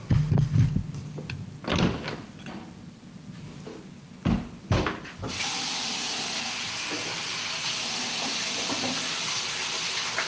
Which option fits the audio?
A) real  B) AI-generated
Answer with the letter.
A